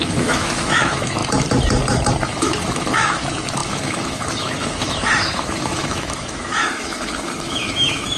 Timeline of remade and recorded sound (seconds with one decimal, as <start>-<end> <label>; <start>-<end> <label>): 0.0-1.2 remade; 1.2-2.2 recorded; 2.2-8.2 remade